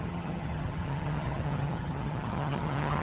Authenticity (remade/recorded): remade